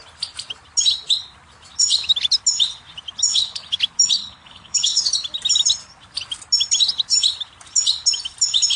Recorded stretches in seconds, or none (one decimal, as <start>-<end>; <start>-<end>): 0.0-3.3; 3.8-4.2; 5.1-8.8